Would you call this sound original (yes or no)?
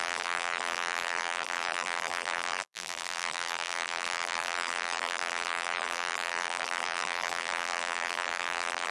no